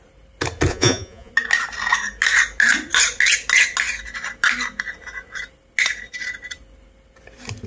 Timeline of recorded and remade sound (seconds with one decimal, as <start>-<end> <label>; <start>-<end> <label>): 0.0-0.7 recorded; 0.7-1.3 remade; 1.3-7.7 recorded